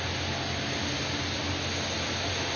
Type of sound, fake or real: real